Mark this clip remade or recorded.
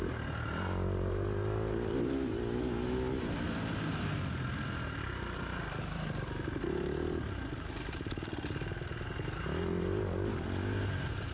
recorded